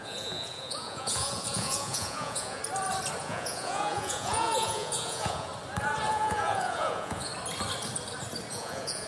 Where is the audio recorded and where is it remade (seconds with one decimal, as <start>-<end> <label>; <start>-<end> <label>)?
0.0-2.6 remade; 2.6-3.2 recorded; 3.2-5.5 remade; 5.5-6.1 recorded; 6.1-7.3 remade; 7.3-8.5 recorded; 8.5-9.1 remade